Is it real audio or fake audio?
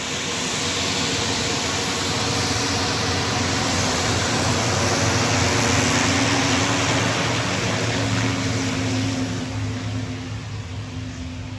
real